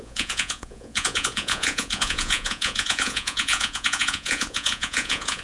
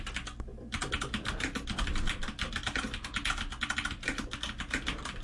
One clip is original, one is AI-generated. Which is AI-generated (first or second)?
first